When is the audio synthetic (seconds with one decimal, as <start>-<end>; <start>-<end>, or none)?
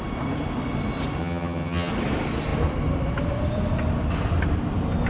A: 1.2-1.9